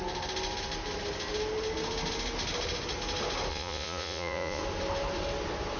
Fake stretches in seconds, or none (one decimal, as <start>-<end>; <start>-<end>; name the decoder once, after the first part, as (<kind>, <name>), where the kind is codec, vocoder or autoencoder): 3.5-4.6 (vocoder, Vocos)